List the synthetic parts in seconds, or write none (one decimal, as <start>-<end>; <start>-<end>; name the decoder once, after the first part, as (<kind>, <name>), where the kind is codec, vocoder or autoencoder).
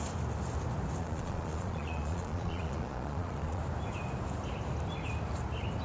1.0-3.6 (vocoder, Vocos)